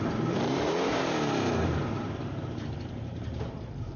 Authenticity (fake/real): fake